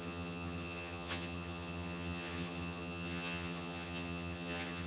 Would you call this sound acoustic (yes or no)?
no